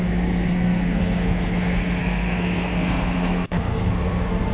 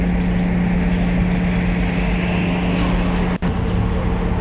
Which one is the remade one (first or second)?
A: first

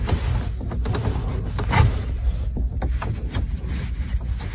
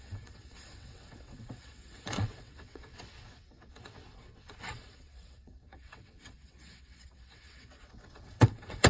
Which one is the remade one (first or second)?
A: second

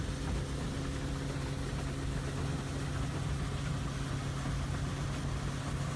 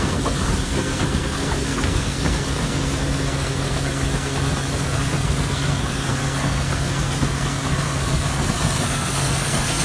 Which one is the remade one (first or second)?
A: second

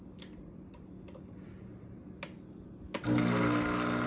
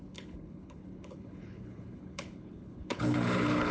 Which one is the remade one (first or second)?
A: second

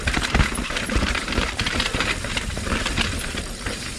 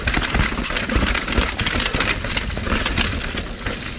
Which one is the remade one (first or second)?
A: first